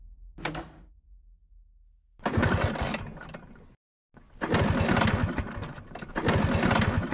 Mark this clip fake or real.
real